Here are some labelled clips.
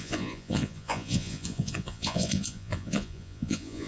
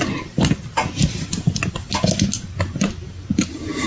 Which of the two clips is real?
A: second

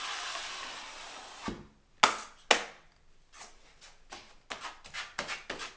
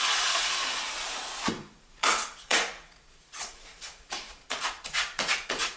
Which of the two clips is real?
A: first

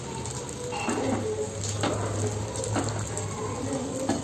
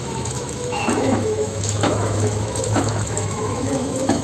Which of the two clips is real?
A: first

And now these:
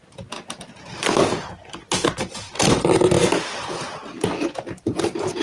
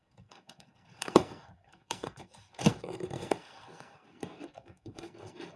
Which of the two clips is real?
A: first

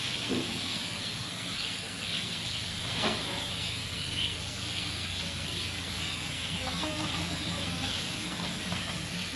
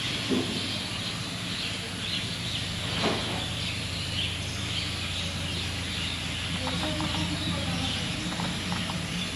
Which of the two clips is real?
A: second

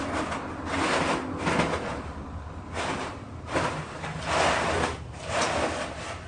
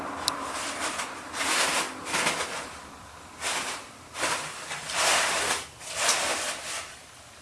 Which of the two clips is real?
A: first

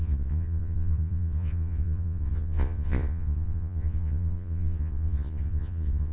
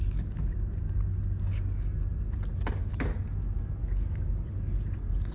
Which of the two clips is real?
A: second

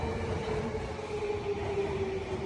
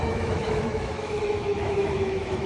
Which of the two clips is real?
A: first